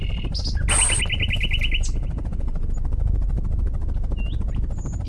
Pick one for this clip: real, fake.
real